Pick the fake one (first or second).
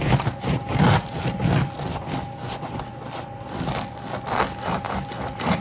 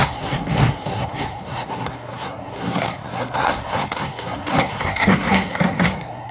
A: second